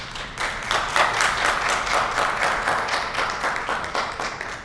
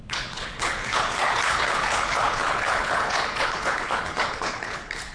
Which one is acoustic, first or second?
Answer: first